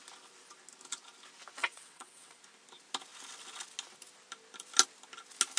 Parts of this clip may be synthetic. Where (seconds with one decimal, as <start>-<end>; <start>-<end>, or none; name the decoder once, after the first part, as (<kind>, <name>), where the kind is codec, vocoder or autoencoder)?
1.6-2.4 (vocoder, WaveNeXt)